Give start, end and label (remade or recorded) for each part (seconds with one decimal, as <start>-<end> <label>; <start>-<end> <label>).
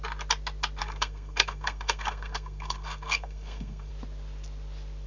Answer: 0.0-0.8 recorded; 0.8-3.9 remade; 3.9-5.1 recorded